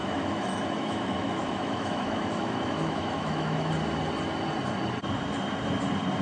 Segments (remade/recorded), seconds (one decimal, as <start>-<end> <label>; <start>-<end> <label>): 0.0-3.7 remade; 3.7-6.2 recorded